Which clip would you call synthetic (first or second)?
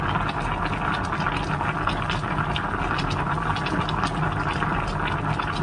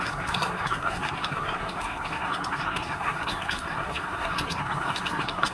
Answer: second